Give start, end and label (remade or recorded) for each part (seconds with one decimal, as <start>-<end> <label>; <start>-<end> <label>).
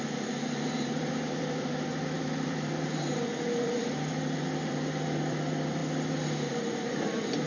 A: 0.0-5.8 remade; 5.8-6.5 recorded; 6.5-7.5 remade